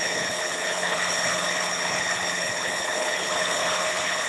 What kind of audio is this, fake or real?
fake